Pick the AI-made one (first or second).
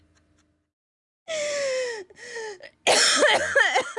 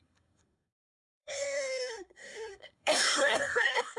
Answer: second